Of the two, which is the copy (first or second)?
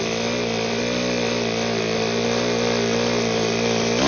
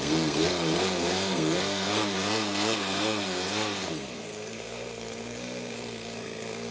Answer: second